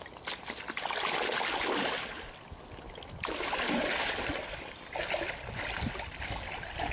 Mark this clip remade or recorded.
recorded